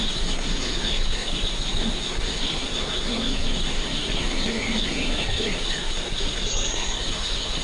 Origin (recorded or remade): remade